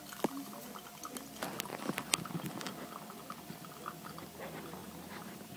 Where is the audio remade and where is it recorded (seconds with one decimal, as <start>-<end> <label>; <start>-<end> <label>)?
0.0-4.8 recorded; 4.8-5.6 remade